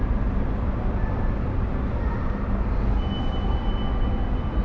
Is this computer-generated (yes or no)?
no